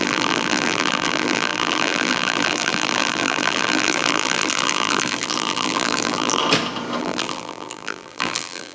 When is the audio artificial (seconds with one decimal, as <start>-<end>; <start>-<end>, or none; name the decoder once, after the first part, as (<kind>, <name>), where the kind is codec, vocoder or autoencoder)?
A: 0.0-6.4 (vocoder, BigVGAN v2); 7.0-8.7